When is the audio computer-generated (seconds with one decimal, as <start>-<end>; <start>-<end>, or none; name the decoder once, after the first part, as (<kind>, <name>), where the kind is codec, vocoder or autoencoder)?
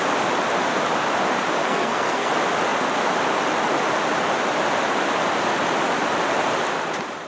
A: 1.6-2.3 (codec, SNAC)